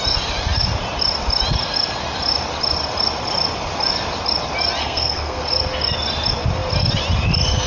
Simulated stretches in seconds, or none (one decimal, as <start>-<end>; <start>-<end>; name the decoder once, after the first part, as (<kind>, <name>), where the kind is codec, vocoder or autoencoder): 4.8-5.4 (codec, SNAC)